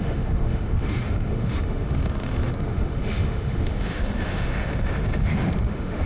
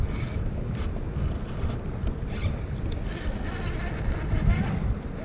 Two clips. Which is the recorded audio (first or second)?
second